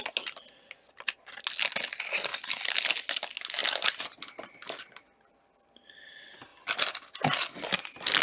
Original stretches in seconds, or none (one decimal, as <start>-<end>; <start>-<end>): 0.0-2.3; 2.9-3.6; 6.0-6.5; 7.4-8.2